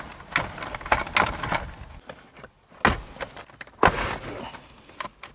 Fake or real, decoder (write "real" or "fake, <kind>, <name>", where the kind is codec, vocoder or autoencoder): real